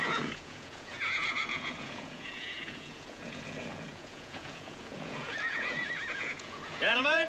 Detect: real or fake fake